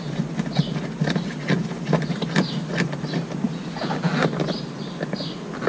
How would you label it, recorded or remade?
recorded